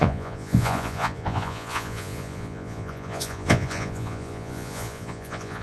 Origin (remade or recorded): remade